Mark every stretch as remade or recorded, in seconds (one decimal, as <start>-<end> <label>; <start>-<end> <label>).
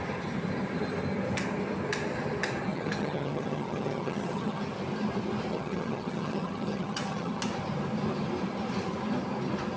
0.0-2.7 recorded; 2.7-4.6 remade; 4.6-5.5 recorded; 5.5-7.4 remade; 7.4-9.8 recorded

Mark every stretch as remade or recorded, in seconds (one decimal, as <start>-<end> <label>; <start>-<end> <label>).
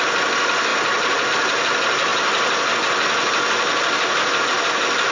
0.0-5.1 recorded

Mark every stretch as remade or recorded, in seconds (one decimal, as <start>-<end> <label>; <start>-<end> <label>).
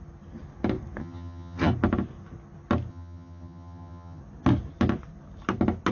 0.0-1.0 recorded; 1.0-1.7 remade; 1.7-2.9 recorded; 2.9-4.2 remade; 4.2-5.9 recorded